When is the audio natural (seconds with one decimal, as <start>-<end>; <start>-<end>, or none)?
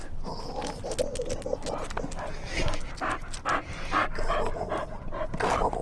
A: 0.0-5.8